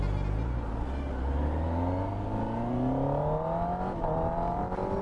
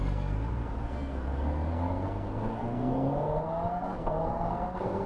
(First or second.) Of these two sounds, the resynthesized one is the second